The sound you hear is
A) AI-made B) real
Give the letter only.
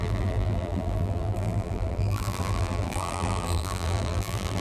A